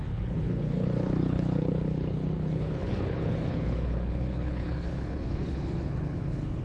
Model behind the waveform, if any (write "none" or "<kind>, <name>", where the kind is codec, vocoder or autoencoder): codec, HILCodec